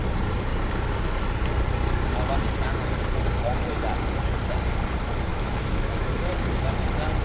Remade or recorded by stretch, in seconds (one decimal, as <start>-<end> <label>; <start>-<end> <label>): 0.0-5.3 recorded; 5.3-6.1 remade; 6.1-7.2 recorded